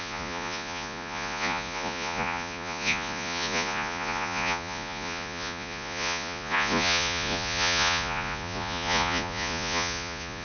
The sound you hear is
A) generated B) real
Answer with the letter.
A